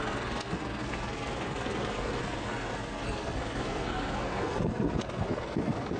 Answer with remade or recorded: remade